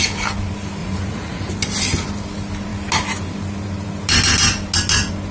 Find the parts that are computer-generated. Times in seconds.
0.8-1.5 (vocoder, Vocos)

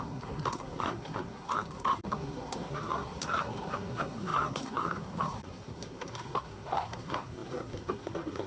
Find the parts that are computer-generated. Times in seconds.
0.0-8.5 (codec, SNAC)

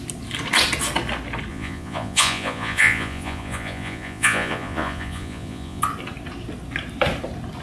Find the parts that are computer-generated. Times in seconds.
1.5-5.8 (vocoder, Vocos)

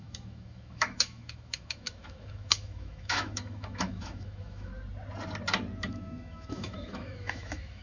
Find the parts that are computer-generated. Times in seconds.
0.0-4.7 (autoencoder, DAC-VAE); 5.9-7.8

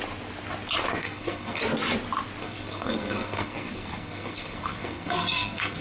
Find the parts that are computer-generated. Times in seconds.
1.0-1.6 (codec, SNAC); 2.4-5.8

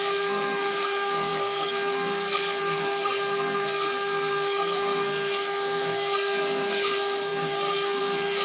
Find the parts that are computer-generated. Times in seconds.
0.0-8.4 (codec, SNAC)

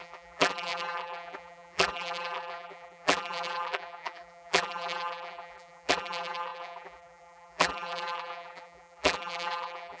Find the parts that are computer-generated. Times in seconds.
0.0-10.0 (vocoder, BigVGAN v2)